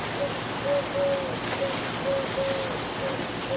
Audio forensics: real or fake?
real